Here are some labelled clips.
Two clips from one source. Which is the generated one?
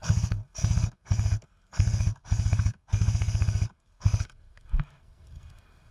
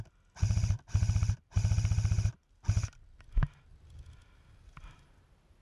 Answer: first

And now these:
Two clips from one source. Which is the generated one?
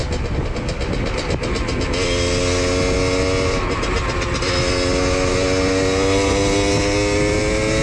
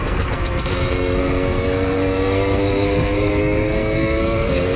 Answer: second